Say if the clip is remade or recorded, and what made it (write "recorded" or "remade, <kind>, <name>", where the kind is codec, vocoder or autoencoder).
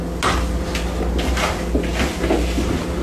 recorded